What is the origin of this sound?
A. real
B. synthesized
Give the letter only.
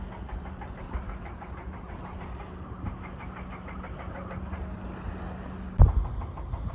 A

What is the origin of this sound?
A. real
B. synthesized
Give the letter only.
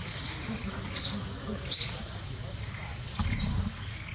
A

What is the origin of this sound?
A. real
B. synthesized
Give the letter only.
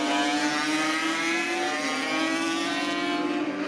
A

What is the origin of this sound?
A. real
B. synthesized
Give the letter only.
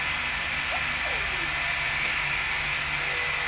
A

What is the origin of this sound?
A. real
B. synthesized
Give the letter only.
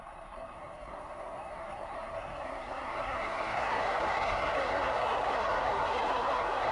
B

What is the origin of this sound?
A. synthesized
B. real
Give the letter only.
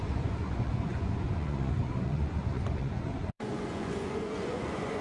A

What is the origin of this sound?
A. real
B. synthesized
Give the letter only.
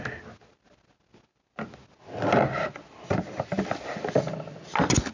A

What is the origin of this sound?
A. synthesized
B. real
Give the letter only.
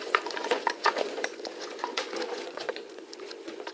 A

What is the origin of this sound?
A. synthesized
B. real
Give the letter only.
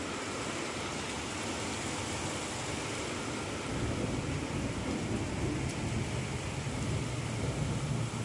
B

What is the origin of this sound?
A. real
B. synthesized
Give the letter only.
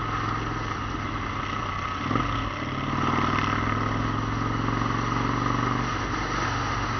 A